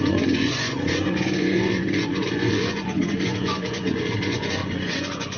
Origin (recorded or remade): remade